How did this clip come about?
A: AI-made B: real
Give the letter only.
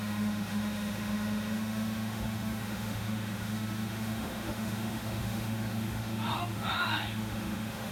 A